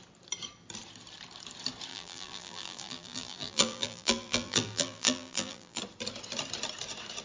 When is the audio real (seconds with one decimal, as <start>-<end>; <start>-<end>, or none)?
0.0-1.9; 5.8-7.2